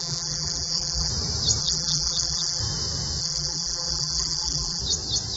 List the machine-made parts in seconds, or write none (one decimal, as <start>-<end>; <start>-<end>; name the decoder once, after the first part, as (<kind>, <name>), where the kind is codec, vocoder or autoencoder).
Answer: 0.0-1.1 (vocoder, BigVGAN v2); 1.6-2.6; 3.2-4.8